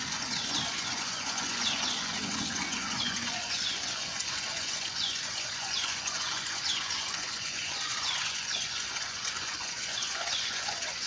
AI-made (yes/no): yes